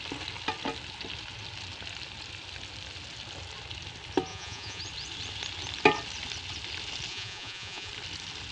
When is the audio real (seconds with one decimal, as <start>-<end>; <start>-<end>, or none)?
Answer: 0.0-4.3; 4.8-7.1; 7.9-8.5